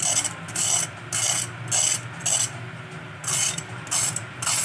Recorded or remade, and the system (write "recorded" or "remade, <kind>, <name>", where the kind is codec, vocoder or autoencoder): recorded